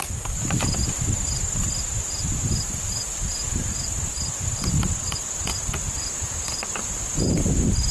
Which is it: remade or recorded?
recorded